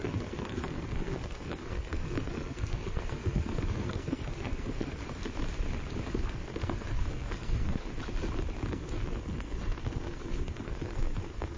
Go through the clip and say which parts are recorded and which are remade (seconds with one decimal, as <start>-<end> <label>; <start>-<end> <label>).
0.0-5.0 remade; 5.0-6.1 recorded; 6.1-7.9 remade; 7.9-8.7 recorded; 8.7-11.6 remade

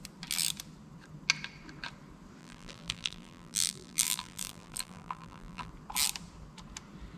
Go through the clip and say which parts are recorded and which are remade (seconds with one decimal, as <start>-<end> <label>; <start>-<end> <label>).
0.0-2.4 recorded; 2.4-5.7 remade; 5.7-7.2 recorded

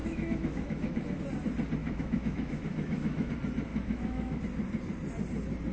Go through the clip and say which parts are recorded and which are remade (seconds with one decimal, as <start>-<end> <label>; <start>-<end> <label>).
0.0-1.2 remade; 1.2-1.8 recorded; 1.8-3.3 remade; 3.3-3.7 recorded; 3.7-4.4 remade; 4.4-5.7 recorded

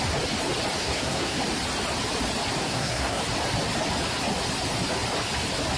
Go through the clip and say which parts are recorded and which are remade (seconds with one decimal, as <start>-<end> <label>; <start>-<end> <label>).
0.0-0.8 recorded; 0.8-1.4 remade; 1.4-2.6 recorded; 2.6-3.2 remade; 3.2-5.8 recorded

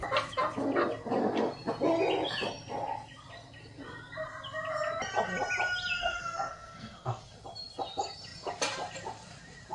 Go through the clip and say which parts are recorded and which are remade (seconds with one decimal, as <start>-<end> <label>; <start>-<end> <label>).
0.0-6.0 recorded; 6.0-7.2 remade; 7.2-9.7 recorded